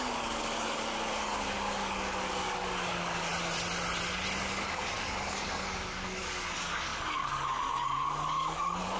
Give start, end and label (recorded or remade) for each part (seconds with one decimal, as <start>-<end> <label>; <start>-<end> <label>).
0.0-3.3 remade; 3.3-4.4 recorded; 4.4-9.0 remade